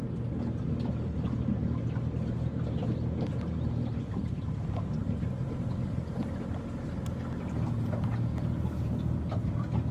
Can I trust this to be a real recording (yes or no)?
yes